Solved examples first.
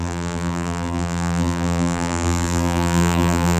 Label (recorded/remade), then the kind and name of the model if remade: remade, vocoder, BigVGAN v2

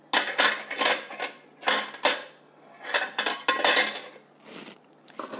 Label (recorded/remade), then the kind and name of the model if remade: recorded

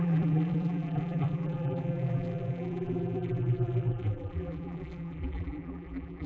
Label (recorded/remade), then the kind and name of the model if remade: remade, vocoder, BigVGAN v2